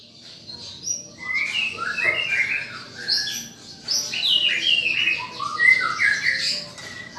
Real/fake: real